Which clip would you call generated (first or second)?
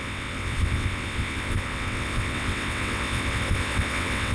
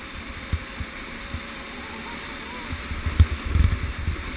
first